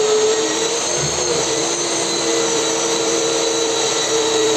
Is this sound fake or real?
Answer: fake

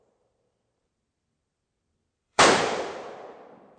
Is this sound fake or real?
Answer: fake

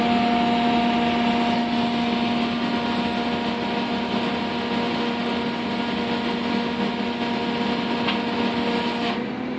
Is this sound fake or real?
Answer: real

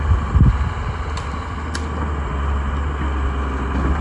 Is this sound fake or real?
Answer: real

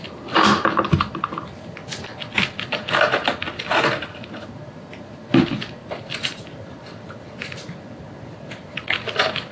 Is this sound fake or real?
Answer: real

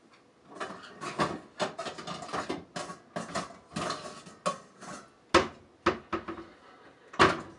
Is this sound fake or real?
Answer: real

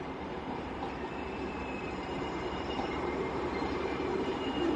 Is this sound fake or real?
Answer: fake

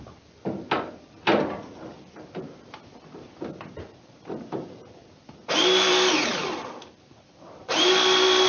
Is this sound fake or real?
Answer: fake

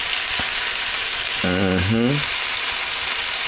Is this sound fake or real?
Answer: real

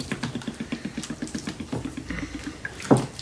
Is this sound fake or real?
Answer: real